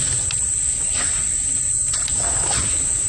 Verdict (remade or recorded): recorded